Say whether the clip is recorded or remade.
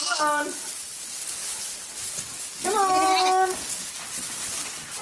recorded